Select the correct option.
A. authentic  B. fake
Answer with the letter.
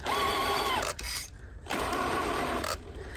B